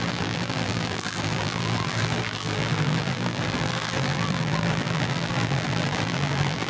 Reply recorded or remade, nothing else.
remade